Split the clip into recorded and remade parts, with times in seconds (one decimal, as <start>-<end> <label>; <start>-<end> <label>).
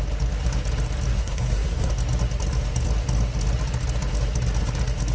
0.0-1.1 recorded; 1.1-1.9 remade; 1.9-5.1 recorded